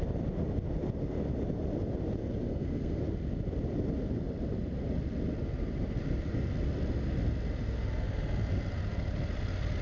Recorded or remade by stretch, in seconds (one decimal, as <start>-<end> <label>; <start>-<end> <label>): 0.0-2.5 recorded; 2.5-3.0 remade; 3.0-9.8 recorded